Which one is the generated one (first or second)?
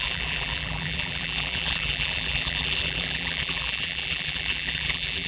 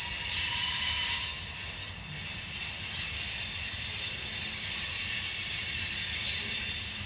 first